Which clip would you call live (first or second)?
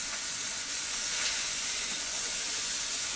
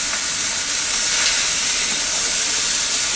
second